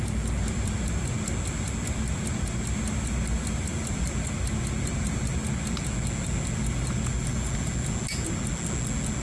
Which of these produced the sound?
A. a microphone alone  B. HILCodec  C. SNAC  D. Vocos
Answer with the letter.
A